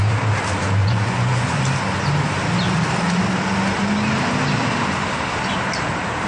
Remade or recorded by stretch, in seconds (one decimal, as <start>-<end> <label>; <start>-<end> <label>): 0.0-0.8 recorded; 0.8-1.6 remade; 1.6-6.3 recorded